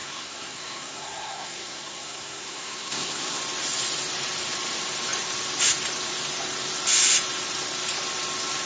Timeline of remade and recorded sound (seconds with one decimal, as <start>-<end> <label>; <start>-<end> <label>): 0.0-3.4 remade; 3.4-8.7 recorded